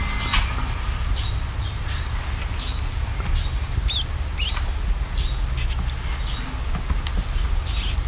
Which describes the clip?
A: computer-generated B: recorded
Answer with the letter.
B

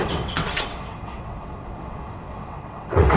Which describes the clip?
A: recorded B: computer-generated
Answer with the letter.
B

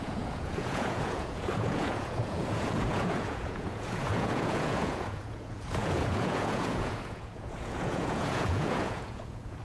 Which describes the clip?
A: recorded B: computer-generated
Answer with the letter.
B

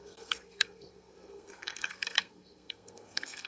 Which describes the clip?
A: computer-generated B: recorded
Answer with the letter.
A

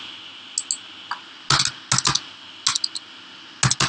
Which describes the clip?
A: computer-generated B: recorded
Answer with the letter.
B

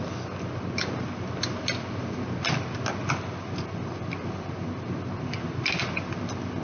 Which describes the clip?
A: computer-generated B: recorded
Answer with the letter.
B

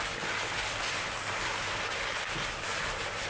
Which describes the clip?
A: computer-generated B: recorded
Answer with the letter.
B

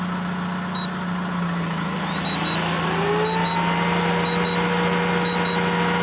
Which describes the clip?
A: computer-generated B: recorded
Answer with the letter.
B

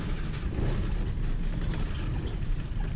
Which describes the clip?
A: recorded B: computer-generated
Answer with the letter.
A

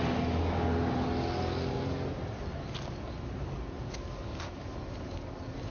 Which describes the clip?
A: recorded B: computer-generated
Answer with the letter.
A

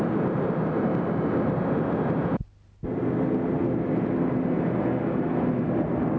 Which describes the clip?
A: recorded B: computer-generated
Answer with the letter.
A